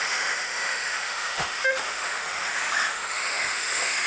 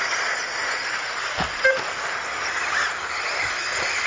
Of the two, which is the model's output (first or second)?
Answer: first